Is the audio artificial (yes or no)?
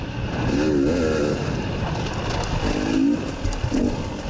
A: no